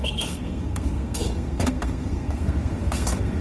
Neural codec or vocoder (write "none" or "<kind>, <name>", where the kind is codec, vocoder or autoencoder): codec, SNAC